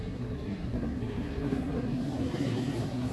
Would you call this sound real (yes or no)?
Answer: no